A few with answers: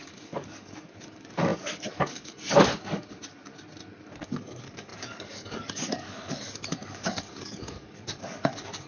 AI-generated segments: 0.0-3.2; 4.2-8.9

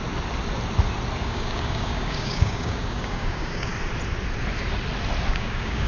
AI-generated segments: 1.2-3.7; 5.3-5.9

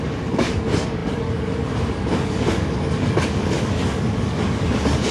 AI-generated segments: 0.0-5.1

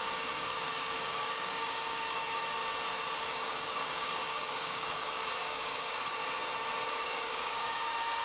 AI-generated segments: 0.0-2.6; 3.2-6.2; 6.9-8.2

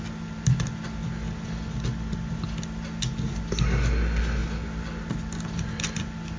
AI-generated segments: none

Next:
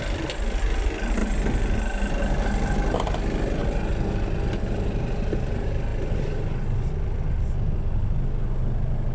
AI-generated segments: none

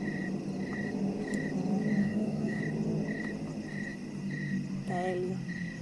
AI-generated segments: 2.0-2.6

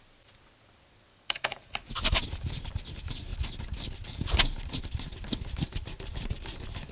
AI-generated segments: 1.1-1.7